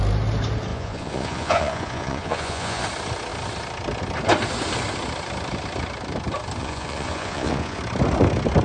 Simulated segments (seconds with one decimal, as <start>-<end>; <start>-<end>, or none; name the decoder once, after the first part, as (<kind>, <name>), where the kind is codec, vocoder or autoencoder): 0.7-2.8 (vocoder, Vocos); 6.6-7.8